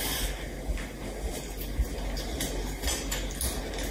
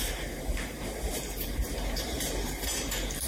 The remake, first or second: second